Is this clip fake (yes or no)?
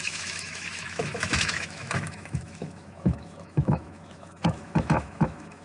yes